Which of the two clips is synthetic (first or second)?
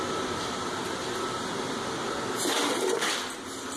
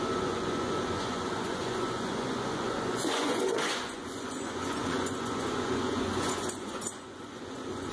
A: second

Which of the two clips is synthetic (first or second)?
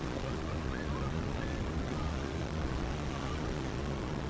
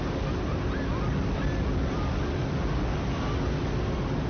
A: first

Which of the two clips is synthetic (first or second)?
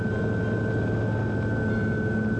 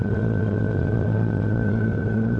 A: second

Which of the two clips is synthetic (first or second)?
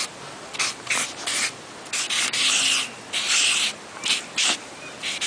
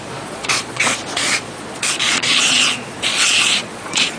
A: second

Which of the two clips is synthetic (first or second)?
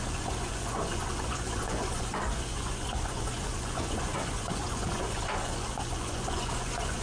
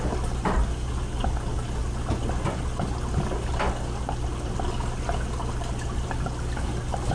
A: first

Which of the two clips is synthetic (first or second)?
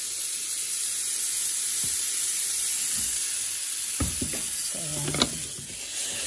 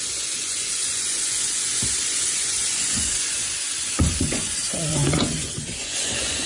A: second